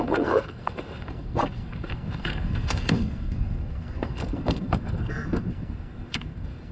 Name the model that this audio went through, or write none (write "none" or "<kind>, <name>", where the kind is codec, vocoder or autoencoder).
codec, SNAC